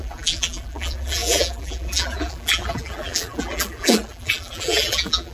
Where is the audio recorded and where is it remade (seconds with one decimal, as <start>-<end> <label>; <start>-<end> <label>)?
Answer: 0.0-5.3 remade